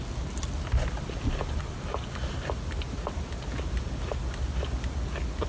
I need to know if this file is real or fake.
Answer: real